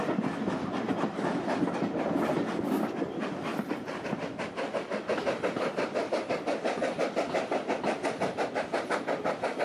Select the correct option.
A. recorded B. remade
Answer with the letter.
B